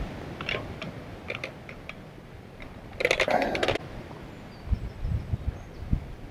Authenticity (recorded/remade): recorded